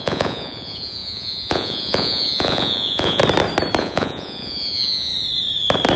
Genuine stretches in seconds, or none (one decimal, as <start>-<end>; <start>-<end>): 3.2-3.8; 5.1-6.0